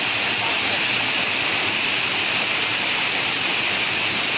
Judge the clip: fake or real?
real